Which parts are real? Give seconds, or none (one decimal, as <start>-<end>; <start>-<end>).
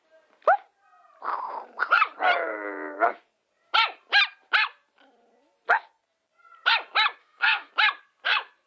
0.0-7.2; 7.7-8.7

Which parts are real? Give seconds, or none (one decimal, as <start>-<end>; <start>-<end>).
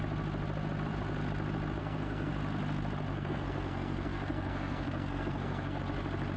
0.0-1.8; 2.3-3.1; 5.8-6.4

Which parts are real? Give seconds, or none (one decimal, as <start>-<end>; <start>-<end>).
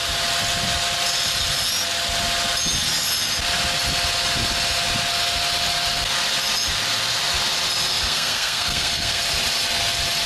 0.0-7.9; 9.2-10.3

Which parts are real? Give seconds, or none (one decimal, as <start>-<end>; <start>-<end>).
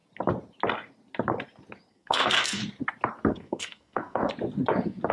0.0-1.9; 2.6-3.3; 4.2-5.1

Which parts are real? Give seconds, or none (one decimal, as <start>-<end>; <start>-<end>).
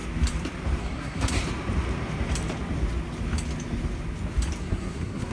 0.0-0.8; 1.4-4.6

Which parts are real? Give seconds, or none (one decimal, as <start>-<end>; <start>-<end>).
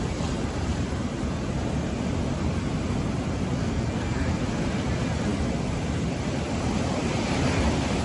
0.0-3.6; 4.4-8.0